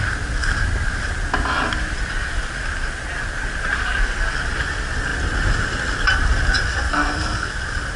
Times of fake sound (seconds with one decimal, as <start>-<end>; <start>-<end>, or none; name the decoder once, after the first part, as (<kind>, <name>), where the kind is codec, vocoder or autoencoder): 6.9-7.5 (codec, SNAC)